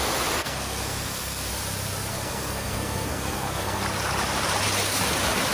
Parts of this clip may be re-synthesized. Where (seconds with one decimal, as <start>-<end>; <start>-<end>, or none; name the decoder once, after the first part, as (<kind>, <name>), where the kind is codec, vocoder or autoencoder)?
0.4-1.5 (codec, SNAC); 2.1-3.8